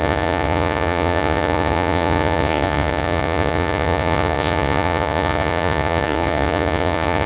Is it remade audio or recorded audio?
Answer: remade